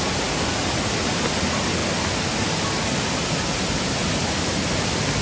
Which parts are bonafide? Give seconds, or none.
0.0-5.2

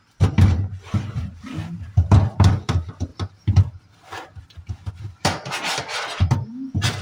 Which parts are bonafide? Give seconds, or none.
0.0-3.1; 3.9-7.0

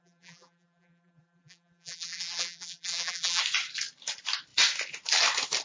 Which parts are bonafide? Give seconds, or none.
3.4-5.6

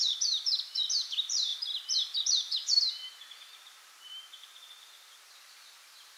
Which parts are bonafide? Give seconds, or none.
1.5-2.2

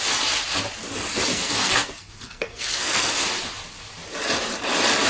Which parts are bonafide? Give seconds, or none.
0.0-1.3; 3.1-5.1

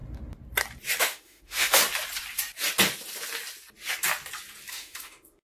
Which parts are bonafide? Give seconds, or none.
0.0-1.0; 1.8-4.7